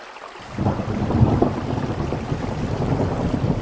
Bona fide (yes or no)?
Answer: yes